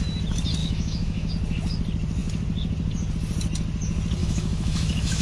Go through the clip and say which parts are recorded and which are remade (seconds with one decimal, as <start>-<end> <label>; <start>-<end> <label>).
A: 0.0-0.6 recorded; 0.6-1.3 remade; 1.3-4.2 recorded; 4.2-5.2 remade